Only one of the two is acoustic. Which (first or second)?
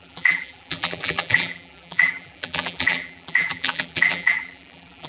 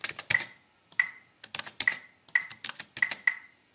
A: second